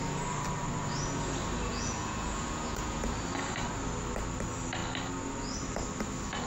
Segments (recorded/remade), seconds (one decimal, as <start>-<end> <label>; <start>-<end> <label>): 0.0-1.7 recorded; 1.7-3.1 remade; 3.1-6.5 recorded

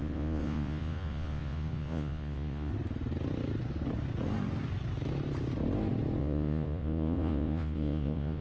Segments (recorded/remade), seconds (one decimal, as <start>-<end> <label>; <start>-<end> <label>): 0.0-2.7 remade; 2.7-6.2 recorded; 6.2-8.4 remade

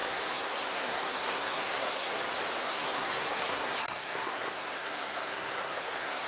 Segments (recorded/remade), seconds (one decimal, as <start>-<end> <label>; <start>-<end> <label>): 0.0-2.2 remade; 2.2-2.6 recorded; 2.6-6.3 remade

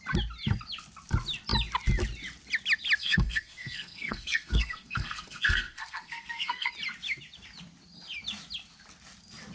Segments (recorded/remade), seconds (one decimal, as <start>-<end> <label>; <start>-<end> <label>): 0.0-3.0 recorded; 3.0-6.7 remade; 6.7-9.5 recorded

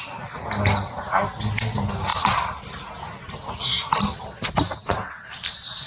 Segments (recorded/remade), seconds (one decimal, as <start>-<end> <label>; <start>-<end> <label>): 0.0-5.9 recorded

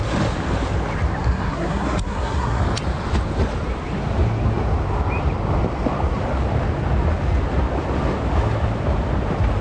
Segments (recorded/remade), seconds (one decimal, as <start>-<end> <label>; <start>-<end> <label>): 0.0-1.2 recorded; 1.2-2.6 remade; 2.6-9.6 recorded

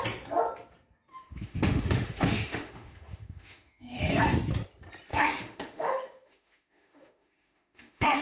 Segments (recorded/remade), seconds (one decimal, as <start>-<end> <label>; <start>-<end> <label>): 0.0-1.1 recorded; 1.1-4.1 remade; 4.1-5.1 recorded; 5.1-8.2 remade

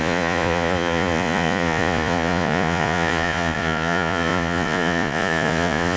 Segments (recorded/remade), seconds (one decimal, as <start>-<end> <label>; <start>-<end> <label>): 0.0-6.0 remade